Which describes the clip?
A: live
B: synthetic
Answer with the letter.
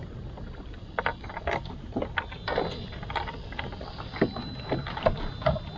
A